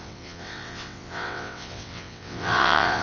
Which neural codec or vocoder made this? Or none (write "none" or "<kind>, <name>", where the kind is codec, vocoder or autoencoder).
vocoder, WaveNeXt